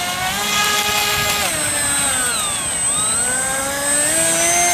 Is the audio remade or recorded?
recorded